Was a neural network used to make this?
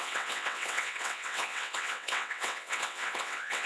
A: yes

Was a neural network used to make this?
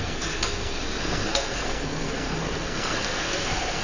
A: yes